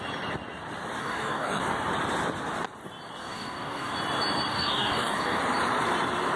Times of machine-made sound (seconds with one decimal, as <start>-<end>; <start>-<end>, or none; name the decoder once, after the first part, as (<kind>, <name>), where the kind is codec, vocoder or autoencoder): 1.0-1.6 (codec, DAC); 3.2-3.9; 4.5-5.4